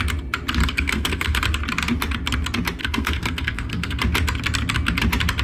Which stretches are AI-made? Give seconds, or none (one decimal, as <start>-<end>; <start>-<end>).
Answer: 0.6-1.4; 2.8-4.0